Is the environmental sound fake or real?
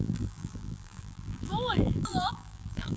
fake